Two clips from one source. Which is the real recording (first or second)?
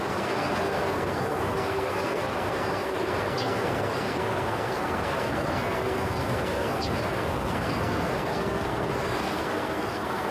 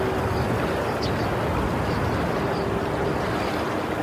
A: second